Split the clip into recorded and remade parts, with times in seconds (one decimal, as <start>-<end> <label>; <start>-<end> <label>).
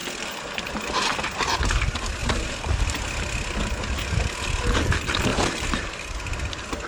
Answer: 0.0-2.2 recorded; 2.2-2.8 remade; 2.8-5.3 recorded; 5.3-6.0 remade; 6.0-6.9 recorded